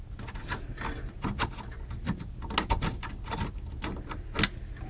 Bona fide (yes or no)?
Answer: yes